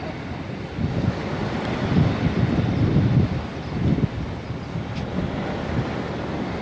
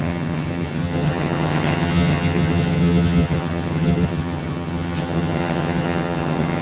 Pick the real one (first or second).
first